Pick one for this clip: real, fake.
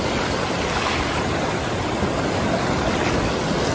real